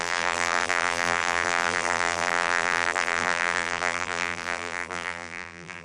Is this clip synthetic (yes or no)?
yes